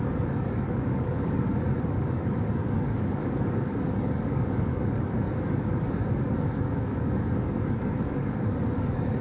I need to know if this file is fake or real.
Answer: fake